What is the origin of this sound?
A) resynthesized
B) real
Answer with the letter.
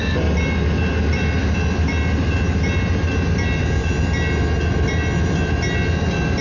B